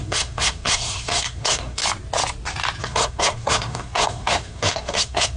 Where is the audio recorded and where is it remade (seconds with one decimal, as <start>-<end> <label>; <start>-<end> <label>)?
0.0-1.8 remade; 1.8-2.8 recorded; 2.8-5.4 remade